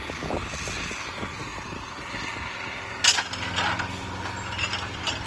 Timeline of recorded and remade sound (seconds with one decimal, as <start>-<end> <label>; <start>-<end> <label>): 0.0-5.3 recorded